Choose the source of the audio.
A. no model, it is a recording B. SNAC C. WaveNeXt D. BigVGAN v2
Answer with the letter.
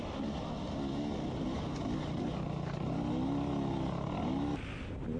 A